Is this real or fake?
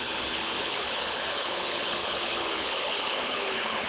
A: fake